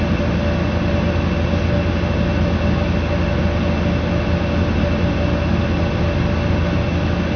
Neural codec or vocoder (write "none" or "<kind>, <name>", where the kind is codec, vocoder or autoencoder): none